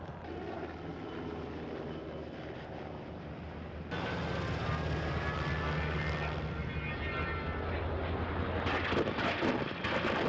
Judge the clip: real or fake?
real